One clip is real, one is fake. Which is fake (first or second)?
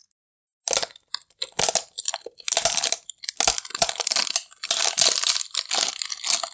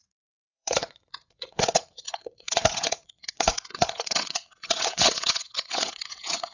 second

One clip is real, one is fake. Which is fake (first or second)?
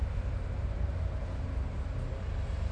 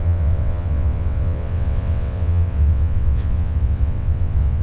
second